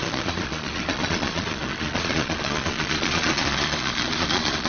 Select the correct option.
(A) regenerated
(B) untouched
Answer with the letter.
A